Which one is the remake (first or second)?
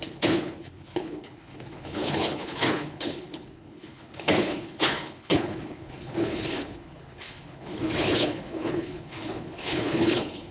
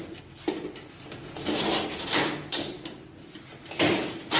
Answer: first